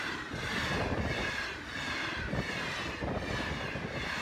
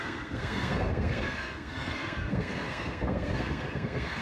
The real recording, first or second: first